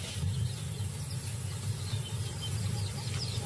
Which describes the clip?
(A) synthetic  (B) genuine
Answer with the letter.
B